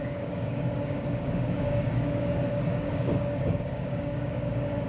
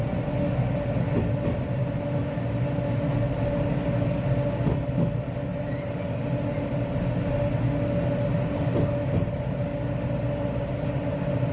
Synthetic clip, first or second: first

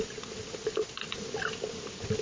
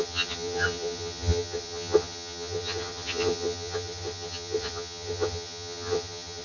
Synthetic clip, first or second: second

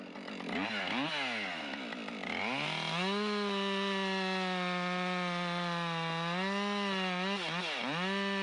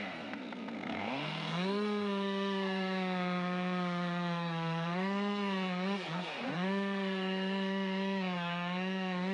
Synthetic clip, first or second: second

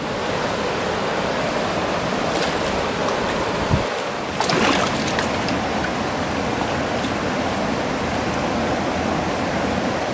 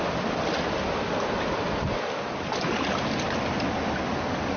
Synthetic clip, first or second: first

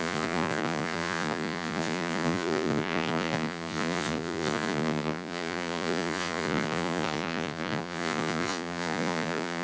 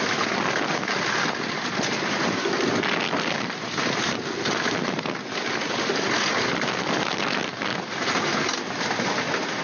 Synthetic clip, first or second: first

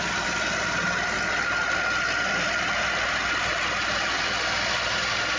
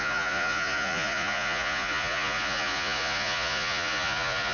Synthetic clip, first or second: second